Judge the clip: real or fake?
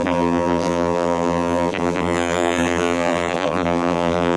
fake